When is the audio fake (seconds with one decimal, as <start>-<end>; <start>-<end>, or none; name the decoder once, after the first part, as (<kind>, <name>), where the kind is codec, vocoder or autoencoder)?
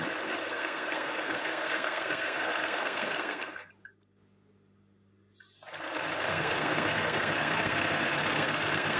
0.4-3.7 (codec, SNAC); 6.3-9.0